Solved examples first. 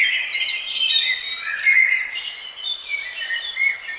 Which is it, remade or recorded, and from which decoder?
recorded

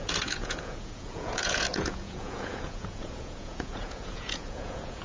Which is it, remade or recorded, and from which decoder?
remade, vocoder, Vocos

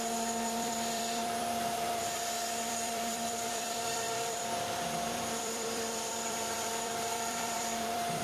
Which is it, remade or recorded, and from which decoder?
remade, vocoder, BigVGAN v2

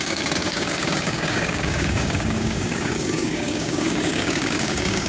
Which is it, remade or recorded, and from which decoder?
remade, codec, DAC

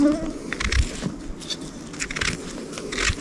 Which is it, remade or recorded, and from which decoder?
recorded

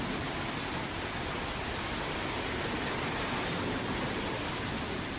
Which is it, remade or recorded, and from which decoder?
recorded